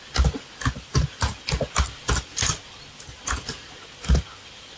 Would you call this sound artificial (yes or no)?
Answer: no